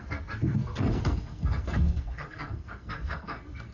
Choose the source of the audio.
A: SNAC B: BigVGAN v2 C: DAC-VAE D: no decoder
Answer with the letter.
A